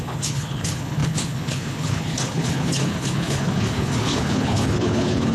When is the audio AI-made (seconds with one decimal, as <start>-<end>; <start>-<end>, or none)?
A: 0.0-5.3